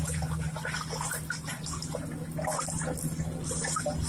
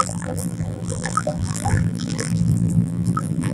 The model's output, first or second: second